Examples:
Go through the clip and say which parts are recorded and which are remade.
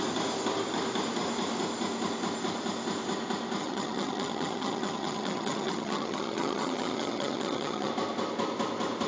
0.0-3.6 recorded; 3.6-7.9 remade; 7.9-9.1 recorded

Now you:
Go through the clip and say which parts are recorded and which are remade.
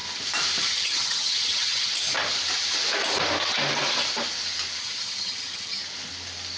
0.0-0.6 recorded; 0.6-1.9 remade; 1.9-4.8 recorded; 4.8-5.8 remade; 5.8-6.6 recorded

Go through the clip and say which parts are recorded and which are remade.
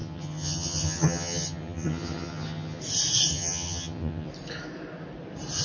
0.0-2.8 remade; 2.8-3.3 recorded; 3.3-4.3 remade; 4.3-5.6 recorded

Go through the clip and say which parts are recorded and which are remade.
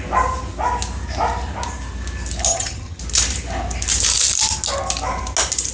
0.0-2.5 recorded; 2.5-3.0 remade; 3.0-5.7 recorded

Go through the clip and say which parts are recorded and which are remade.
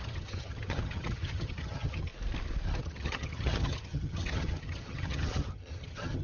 0.0-2.1 remade; 2.1-2.8 recorded; 2.8-6.2 remade